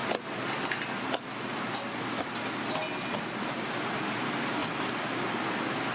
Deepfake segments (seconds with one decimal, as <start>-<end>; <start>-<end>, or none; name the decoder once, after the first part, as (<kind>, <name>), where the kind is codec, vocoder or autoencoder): none